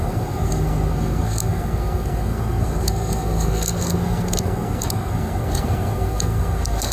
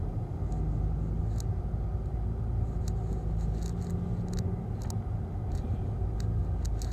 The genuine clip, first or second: second